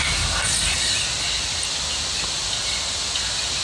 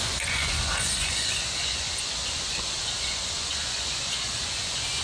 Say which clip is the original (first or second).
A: first